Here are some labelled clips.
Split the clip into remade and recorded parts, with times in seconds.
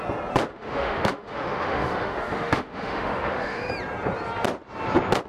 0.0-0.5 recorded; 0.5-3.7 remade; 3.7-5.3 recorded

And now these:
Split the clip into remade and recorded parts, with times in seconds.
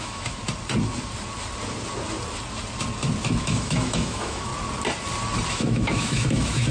0.0-0.4 remade; 0.4-3.2 recorded; 3.2-4.5 remade; 4.5-5.5 recorded; 5.5-6.7 remade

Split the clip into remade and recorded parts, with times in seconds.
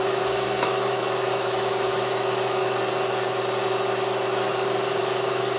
0.0-2.6 remade; 2.6-5.0 recorded; 5.0-5.6 remade